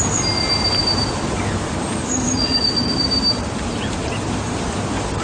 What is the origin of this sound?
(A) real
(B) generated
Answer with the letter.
A